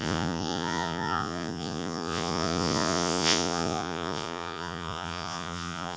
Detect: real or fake fake